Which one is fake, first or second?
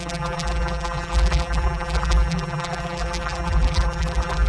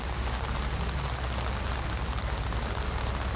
first